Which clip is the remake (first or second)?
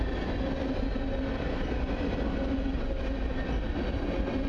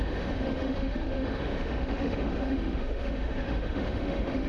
second